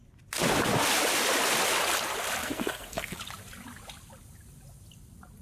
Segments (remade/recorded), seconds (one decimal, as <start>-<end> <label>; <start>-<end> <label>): 0.0-2.4 recorded; 2.4-3.2 remade; 3.2-5.4 recorded